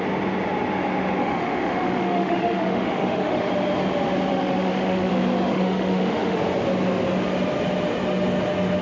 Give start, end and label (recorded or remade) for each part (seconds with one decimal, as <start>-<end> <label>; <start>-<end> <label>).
0.0-1.2 recorded; 1.2-3.5 remade; 3.5-4.3 recorded; 4.3-5.1 remade; 5.1-5.5 recorded; 5.5-6.4 remade; 6.4-8.8 recorded